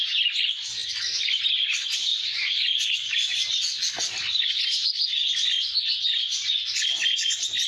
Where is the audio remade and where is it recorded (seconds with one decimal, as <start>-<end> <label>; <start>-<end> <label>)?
0.0-2.1 recorded; 2.1-3.5 remade; 3.5-7.7 recorded